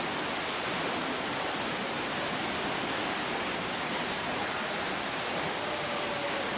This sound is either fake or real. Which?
real